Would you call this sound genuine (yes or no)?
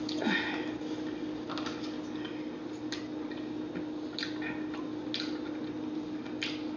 yes